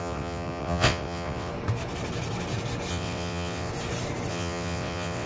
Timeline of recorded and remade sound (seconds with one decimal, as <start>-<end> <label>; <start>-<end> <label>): 0.0-1.5 remade; 1.5-2.9 recorded; 2.9-3.7 remade; 3.7-4.3 recorded; 4.3-5.3 remade